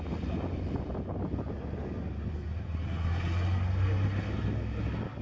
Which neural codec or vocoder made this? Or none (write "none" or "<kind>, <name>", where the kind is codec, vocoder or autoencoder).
none